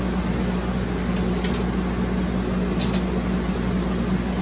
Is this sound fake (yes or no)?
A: no